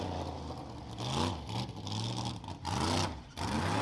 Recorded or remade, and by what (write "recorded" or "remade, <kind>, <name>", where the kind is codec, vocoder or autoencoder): recorded